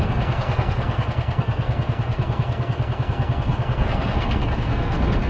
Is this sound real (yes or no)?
no